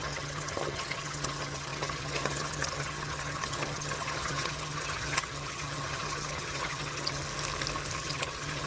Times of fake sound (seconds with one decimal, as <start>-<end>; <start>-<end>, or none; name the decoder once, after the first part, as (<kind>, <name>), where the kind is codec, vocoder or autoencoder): 0.0-7.2 (vocoder, HiFi-GAN); 8.0-8.7